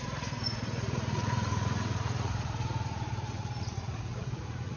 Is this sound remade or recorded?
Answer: remade